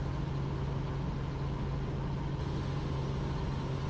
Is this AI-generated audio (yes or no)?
no